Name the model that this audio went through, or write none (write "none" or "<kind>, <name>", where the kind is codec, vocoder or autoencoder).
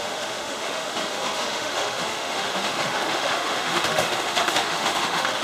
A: autoencoder, DAC-VAE